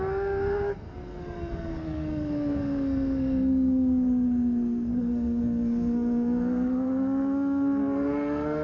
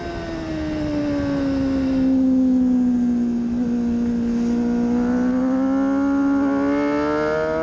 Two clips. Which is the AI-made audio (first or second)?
first